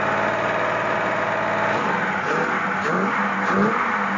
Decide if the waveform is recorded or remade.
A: recorded